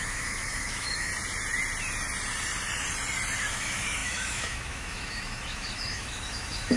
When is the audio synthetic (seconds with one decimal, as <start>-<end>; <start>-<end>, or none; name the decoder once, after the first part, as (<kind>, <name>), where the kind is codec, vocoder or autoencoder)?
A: 0.0-1.1 (autoencoder, DAC-VAE); 3.5-6.8

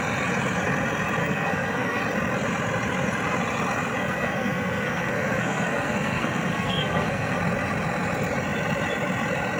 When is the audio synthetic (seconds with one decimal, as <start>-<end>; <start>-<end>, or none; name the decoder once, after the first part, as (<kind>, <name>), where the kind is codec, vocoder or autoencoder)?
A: 1.2-2.0 (codec, SNAC); 4.0-7.4

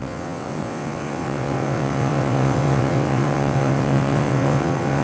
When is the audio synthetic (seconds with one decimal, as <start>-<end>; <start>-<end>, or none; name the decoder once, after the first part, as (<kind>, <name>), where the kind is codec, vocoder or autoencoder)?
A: 0.0-5.0 (vocoder, WaveNeXt)

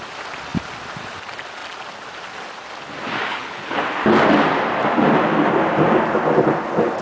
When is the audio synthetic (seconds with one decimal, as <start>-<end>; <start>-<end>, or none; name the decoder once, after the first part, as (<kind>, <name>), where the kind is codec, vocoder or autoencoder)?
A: 3.3-3.8 (codec, HILCodec)

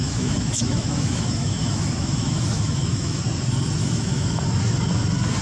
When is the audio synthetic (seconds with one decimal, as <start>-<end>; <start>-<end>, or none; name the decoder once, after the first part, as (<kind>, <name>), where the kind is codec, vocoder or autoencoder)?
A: 0.0-3.2 (autoencoder, DAC-VAE); 3.8-4.4

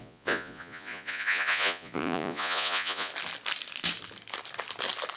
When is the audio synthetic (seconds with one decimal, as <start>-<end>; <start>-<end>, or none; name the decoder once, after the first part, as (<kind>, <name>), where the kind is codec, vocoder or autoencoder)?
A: 0.0-3.1 (vocoder, Vocos)

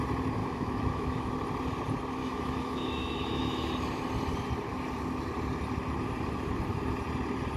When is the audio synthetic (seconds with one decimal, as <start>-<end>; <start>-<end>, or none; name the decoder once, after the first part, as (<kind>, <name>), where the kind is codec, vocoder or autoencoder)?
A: 0.4-1.3 (autoencoder, DAC-VAE); 2.2-3.7